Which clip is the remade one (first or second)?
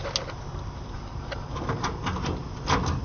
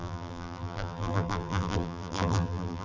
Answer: second